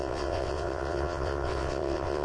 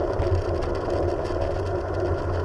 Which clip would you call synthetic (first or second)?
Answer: first